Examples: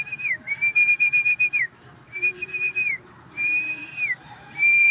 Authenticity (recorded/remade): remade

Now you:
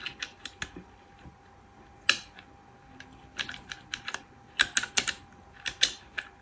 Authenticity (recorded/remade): recorded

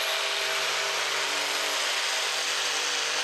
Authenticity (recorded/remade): remade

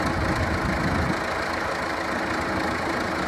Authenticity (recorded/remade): recorded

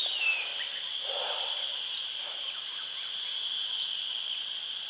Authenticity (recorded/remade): remade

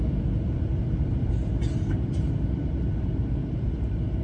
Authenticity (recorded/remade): remade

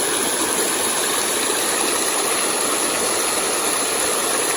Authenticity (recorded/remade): recorded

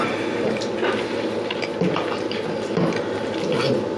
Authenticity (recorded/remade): recorded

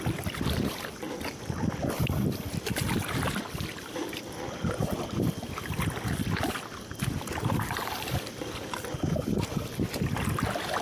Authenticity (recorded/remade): remade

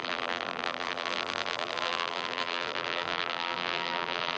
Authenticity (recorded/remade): remade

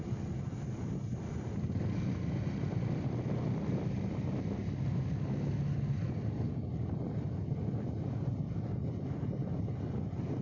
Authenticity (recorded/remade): recorded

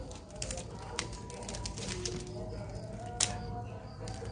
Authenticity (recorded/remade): recorded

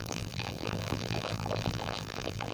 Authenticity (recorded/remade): remade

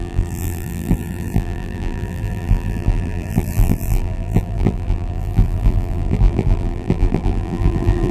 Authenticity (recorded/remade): remade